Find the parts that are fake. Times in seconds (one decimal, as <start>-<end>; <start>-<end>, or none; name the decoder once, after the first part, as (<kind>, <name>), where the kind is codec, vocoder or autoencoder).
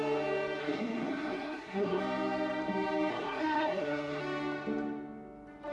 0.6-2.0 (codec, SNAC); 3.1-4.2